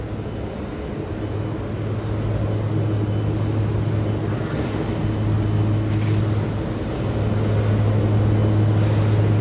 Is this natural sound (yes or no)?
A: yes